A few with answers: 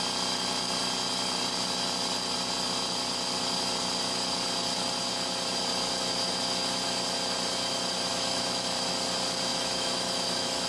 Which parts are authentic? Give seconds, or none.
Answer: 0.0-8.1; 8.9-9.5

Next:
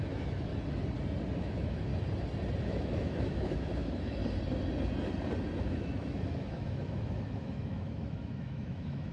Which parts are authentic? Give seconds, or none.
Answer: 0.5-1.4; 1.9-2.6; 4.2-5.6

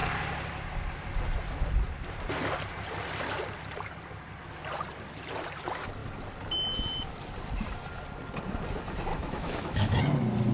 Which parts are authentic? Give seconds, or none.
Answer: 0.0-9.1; 10.0-10.5